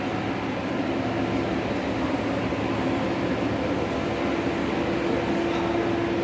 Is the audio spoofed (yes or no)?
no